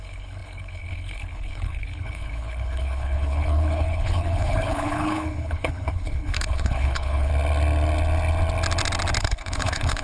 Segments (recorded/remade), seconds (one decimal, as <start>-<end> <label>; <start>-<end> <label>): 0.0-7.3 remade; 7.3-9.2 recorded; 9.2-10.0 remade